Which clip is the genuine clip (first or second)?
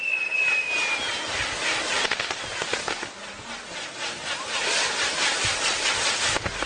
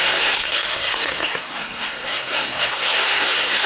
first